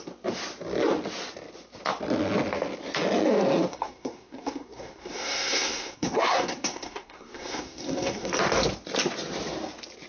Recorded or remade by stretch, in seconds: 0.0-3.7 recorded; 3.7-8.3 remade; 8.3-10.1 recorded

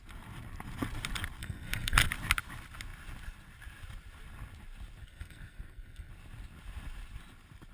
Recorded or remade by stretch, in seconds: 0.0-1.4 recorded; 1.4-2.1 remade; 2.1-5.0 recorded; 5.0-6.1 remade; 6.1-7.7 recorded

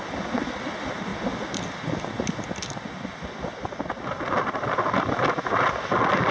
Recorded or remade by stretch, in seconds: 0.0-6.3 recorded

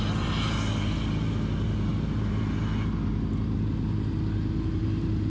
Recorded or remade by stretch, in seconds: 0.0-5.3 recorded

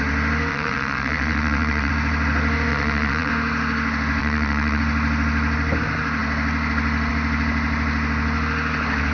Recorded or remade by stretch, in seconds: 0.0-0.5 recorded; 0.5-1.9 remade; 1.9-2.7 recorded; 2.7-3.3 remade; 3.3-4.2 recorded; 4.2-4.8 remade; 4.8-9.1 recorded

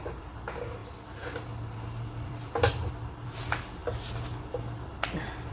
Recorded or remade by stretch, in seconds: 0.0-0.8 recorded; 0.8-2.9 remade; 2.9-5.5 recorded